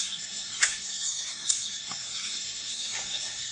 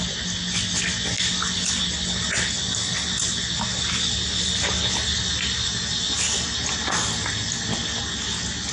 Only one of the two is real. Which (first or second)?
second